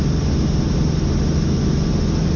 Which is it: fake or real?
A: real